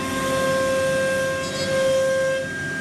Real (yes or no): yes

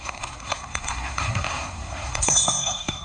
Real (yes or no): no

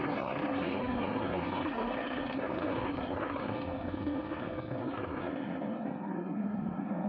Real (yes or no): no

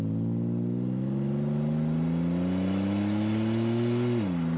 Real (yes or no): yes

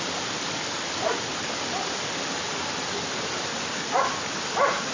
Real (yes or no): yes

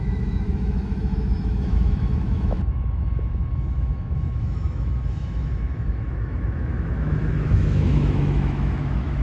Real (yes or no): no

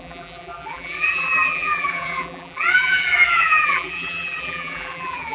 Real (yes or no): no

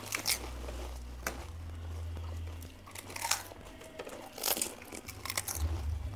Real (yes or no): yes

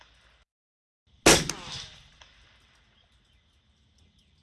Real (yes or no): yes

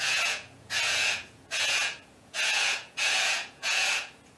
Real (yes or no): no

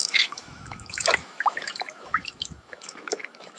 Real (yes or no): no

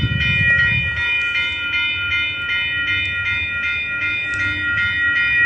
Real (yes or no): yes